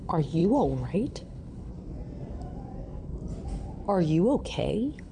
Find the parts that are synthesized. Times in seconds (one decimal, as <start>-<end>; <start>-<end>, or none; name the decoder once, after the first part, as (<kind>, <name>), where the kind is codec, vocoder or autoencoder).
0.0-1.7 (codec, HILCodec); 4.4-5.1